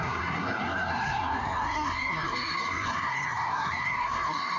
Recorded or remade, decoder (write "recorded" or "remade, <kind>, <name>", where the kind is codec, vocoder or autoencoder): remade, codec, SNAC